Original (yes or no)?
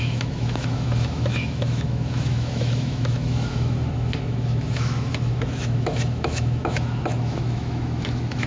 no